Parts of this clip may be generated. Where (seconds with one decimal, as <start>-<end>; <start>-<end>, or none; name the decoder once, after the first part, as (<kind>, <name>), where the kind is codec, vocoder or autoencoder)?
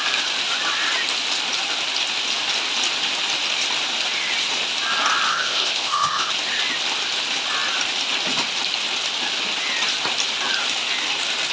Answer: 5.3-6.3 (codec, ZipCodec)